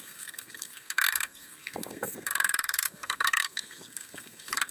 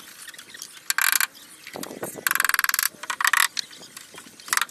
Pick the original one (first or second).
second